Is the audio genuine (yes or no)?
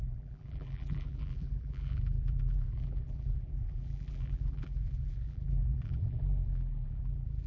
no